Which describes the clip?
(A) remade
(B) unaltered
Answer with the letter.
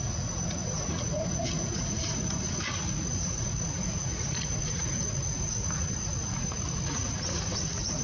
A